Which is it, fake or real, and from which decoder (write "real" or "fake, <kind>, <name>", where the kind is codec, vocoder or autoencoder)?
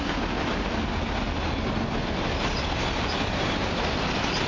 real